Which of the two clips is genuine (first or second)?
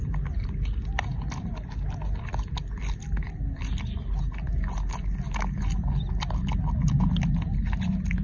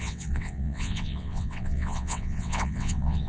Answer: first